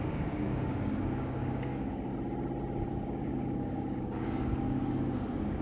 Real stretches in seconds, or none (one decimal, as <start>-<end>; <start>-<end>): 2.1-2.9